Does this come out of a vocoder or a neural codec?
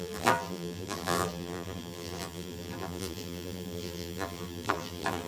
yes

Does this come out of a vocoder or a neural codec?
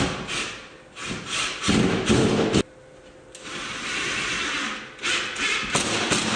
no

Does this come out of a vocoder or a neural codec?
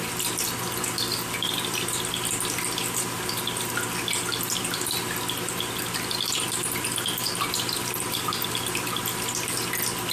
no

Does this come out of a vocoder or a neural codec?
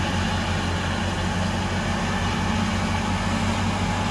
no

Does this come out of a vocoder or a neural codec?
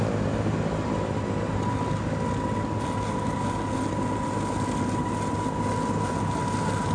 no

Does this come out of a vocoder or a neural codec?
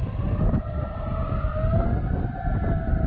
no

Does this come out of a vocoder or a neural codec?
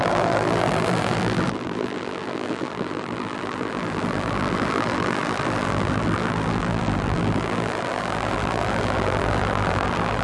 yes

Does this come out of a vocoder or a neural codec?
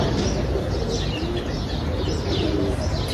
no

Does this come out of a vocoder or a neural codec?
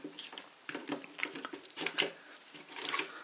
yes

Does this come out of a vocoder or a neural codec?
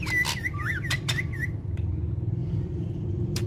yes